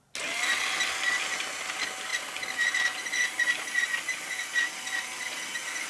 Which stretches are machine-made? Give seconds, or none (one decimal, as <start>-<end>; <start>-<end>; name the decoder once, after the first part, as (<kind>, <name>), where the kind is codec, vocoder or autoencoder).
none